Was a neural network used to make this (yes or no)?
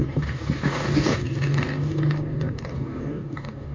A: yes